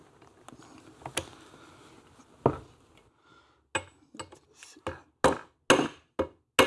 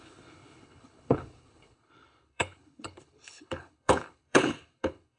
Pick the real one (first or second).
first